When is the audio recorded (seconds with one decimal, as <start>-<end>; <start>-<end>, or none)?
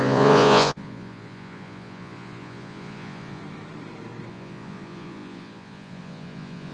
3.4-4.3